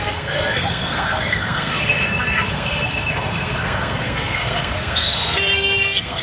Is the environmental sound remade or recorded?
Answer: remade